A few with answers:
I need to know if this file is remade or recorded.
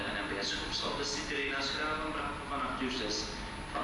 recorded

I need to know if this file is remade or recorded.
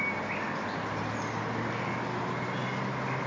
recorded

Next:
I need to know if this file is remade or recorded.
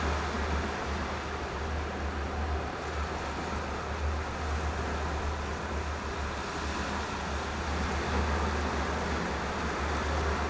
recorded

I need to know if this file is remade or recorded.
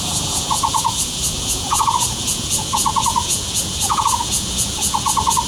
remade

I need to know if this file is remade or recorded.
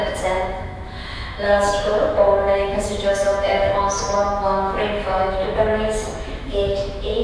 remade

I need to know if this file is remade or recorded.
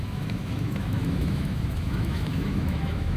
remade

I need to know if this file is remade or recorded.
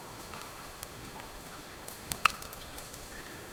remade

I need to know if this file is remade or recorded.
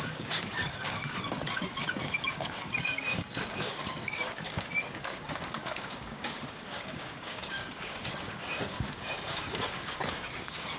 remade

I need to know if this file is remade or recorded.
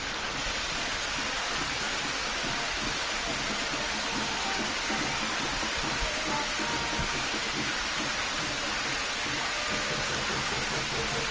recorded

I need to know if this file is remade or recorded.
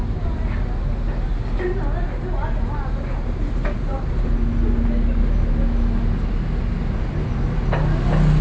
recorded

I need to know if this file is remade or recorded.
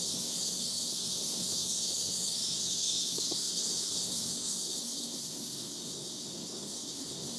remade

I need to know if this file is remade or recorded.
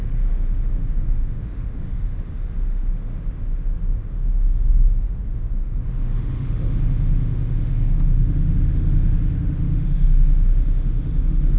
remade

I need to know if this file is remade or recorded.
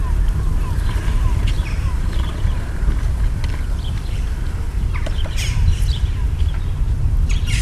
remade